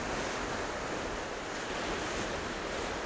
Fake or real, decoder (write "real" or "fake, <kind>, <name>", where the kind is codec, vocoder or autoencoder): real